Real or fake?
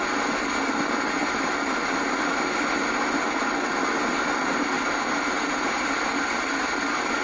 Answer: real